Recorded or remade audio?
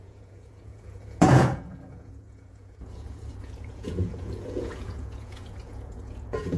remade